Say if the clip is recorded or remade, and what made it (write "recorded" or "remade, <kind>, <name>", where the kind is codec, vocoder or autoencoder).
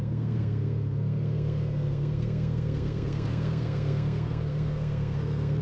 remade, codec, SNAC